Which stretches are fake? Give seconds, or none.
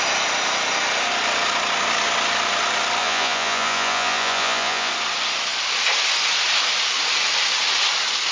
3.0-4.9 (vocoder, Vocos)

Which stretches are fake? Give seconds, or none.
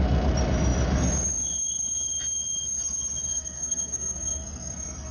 3.3-5.1 (codec, SNAC)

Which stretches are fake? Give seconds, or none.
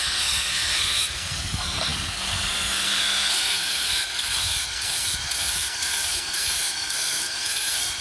0.0-8.0 (codec, SNAC)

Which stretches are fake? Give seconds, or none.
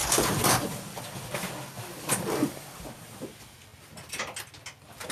0.0-2.8 (vocoder, BigVGAN v2)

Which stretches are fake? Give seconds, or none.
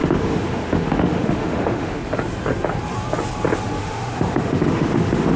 0.0-2.0 (autoencoder, DAC-VAE); 3.8-5.4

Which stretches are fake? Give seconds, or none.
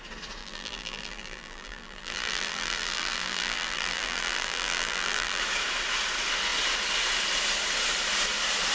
0.4-5.4 (vocoder, BigVGAN v2)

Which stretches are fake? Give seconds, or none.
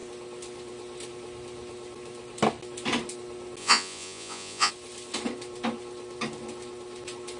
3.6-4.7 (vocoder, Vocos)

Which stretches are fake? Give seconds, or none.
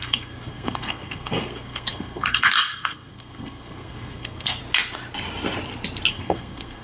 0.0-4.6 (codec, SNAC); 6.1-6.8